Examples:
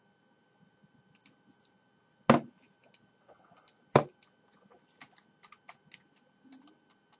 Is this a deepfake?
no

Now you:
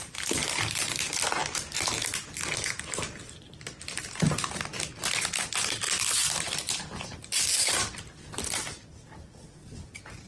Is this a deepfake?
no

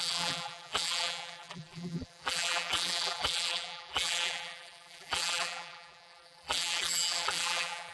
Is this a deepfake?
yes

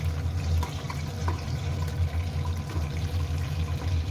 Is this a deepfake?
no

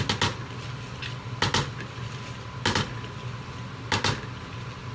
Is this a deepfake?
no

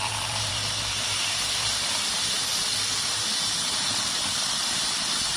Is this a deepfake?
yes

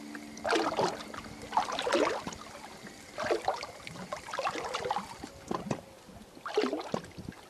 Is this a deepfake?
no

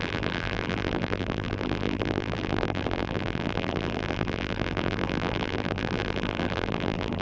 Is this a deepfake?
yes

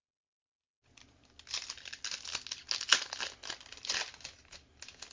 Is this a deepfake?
no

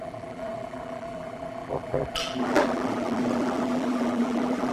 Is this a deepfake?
yes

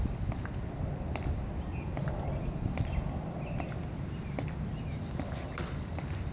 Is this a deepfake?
no